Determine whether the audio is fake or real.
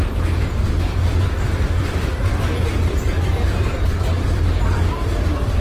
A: fake